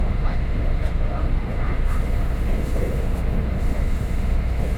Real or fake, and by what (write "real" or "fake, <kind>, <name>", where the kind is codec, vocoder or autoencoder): fake, autoencoder, DAC-VAE